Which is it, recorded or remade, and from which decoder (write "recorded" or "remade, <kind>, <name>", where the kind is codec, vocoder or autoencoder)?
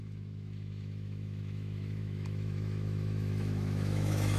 remade, autoencoder, DAC-VAE